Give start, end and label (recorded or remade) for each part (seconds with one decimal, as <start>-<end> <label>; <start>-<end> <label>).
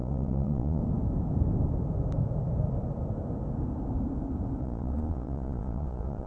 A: 0.0-0.8 remade; 0.8-4.6 recorded; 4.6-6.3 remade